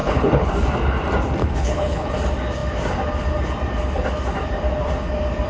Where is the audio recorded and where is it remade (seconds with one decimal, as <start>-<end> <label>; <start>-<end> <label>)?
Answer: 0.0-0.5 remade; 0.5-1.4 recorded; 1.4-2.1 remade; 2.1-5.5 recorded